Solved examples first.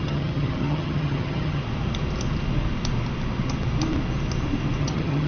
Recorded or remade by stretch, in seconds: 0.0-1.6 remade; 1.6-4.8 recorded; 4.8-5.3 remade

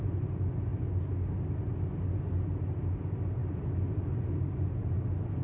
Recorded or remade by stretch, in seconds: 0.0-5.4 recorded